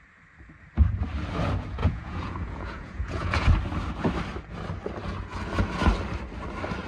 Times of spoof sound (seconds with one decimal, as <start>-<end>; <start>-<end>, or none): 1.8-3.5